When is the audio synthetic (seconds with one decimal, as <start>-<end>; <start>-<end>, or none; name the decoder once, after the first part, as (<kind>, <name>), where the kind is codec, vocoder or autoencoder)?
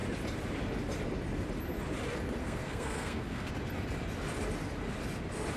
2.4-3.5 (codec, SNAC)